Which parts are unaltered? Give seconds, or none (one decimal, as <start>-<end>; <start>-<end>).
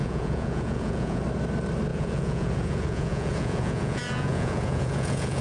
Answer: 1.2-1.9